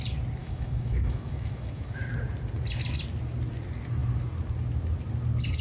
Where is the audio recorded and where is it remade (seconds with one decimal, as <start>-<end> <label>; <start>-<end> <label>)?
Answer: 0.0-0.4 recorded; 0.4-2.0 remade; 2.0-5.6 recorded